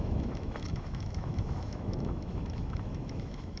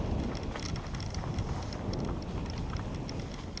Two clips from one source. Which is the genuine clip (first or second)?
second